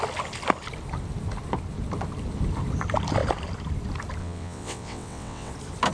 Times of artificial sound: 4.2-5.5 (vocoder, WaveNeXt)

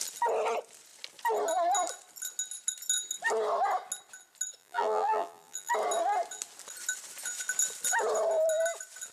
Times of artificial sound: 4.6-5.7 (vocoder, BigVGAN v2)

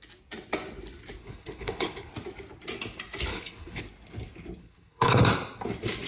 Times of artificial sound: 1.2-2.1 (codec, HILCodec); 3.3-3.8; 4.6-5.2